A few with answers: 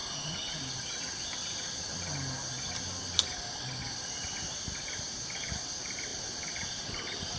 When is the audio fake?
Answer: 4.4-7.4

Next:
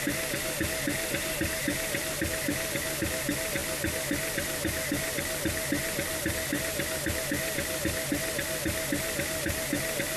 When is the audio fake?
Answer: none